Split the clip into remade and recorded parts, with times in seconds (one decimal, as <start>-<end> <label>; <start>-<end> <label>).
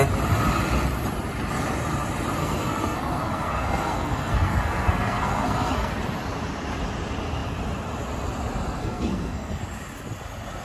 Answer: 0.0-2.4 recorded; 2.4-5.9 remade; 5.9-8.8 recorded; 8.8-9.6 remade; 9.6-10.6 recorded